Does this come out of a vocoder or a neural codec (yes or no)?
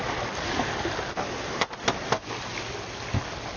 no